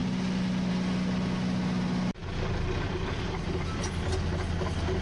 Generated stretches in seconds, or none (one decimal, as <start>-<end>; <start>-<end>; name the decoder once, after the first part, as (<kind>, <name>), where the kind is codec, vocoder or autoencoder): none